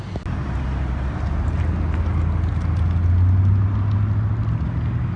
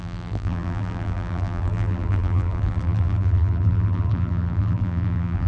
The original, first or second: first